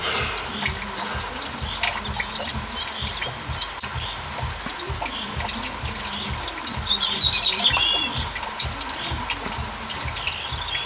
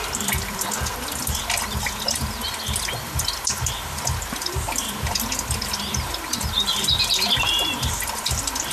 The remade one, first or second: second